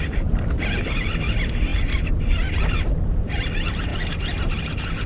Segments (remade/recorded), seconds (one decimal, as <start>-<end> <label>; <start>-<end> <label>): 0.0-5.1 recorded